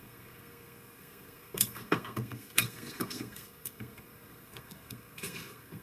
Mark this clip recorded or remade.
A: remade